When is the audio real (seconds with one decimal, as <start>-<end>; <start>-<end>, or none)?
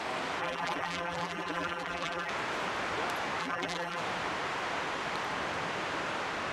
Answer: 0.0-0.4; 2.3-3.4; 4.0-6.5